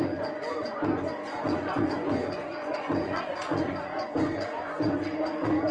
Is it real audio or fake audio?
fake